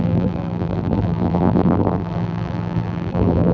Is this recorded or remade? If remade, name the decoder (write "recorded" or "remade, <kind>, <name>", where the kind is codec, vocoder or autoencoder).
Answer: remade, vocoder, BigVGAN v2